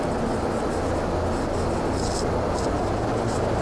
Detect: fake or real real